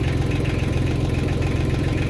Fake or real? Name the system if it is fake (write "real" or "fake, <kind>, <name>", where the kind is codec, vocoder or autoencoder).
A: fake, vocoder, BigVGAN v2